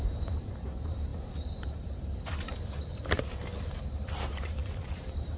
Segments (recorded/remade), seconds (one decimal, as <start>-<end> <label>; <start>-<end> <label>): 0.0-3.5 remade; 3.5-4.3 recorded; 4.3-5.4 remade